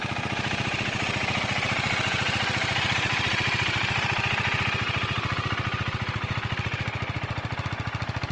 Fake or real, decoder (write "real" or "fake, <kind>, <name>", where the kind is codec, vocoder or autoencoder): real